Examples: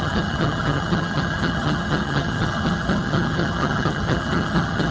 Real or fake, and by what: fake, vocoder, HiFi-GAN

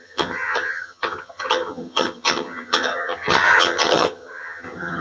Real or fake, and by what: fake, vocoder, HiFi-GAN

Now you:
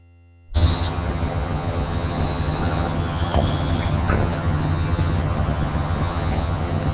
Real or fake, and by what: fake, vocoder, HiFi-GAN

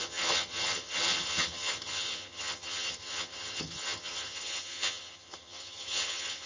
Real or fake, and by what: fake, vocoder, HiFi-GAN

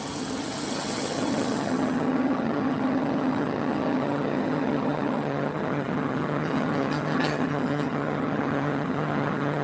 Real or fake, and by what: fake, vocoder, HiFi-GAN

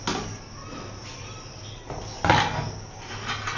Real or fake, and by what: real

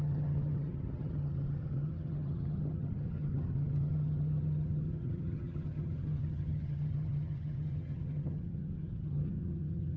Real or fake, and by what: fake, vocoder, HiFi-GAN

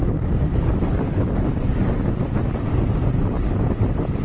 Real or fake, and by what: real